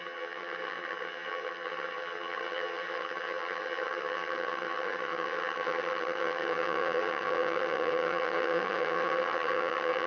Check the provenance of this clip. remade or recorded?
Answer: remade